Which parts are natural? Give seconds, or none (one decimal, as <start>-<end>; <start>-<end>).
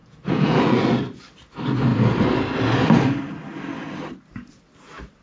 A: 0.8-5.2